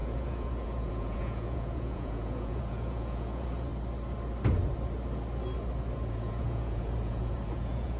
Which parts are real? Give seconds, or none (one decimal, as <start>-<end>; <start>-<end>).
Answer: 3.7-6.1